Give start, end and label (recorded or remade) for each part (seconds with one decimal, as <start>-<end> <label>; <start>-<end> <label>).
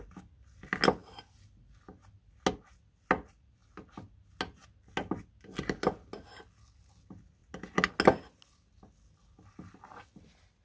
0.0-10.6 recorded